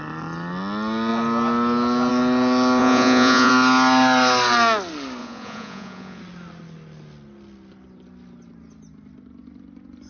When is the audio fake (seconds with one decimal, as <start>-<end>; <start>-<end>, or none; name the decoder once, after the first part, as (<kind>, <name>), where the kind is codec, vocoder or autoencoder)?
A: 2.8-3.5 (vocoder, Vocos); 5.2-6.2